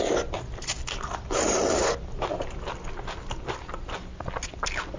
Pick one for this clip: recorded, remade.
recorded